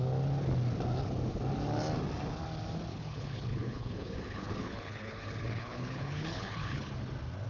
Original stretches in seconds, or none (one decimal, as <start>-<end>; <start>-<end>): 0.0-2.9; 6.9-7.5